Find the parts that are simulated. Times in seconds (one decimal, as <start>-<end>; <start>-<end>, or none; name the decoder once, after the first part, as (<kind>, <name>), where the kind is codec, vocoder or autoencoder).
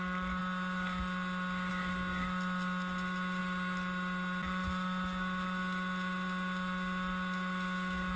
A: none